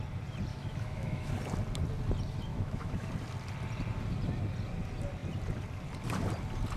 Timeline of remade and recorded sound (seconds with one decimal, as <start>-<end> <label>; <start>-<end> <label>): 0.0-0.5 recorded; 0.5-1.3 remade; 1.3-2.5 recorded; 2.5-3.1 remade; 3.1-6.8 recorded